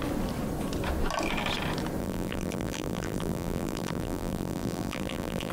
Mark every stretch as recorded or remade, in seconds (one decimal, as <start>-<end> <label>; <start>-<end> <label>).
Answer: 0.0-2.0 recorded; 2.0-5.5 remade